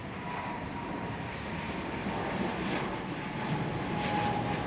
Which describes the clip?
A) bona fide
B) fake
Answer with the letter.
A